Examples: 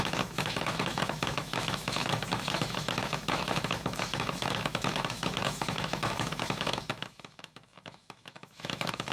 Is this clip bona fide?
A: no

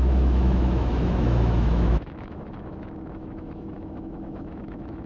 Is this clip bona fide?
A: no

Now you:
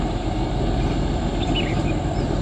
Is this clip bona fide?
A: yes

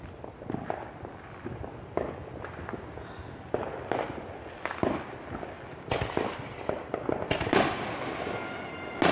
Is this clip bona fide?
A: yes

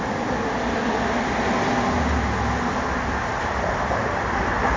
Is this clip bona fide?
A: yes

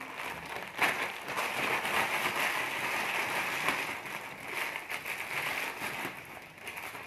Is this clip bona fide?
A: yes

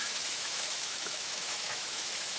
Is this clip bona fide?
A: no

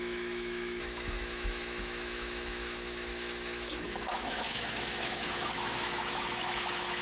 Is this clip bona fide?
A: no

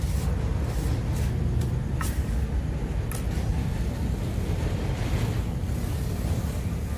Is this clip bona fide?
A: yes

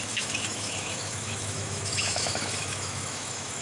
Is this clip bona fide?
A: no